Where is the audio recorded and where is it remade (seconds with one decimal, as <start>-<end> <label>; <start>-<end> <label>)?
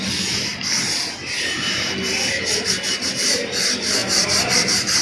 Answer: 0.0-5.0 recorded